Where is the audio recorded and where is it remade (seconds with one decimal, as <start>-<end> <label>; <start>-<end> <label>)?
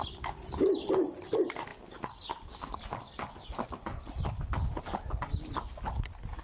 0.0-6.4 recorded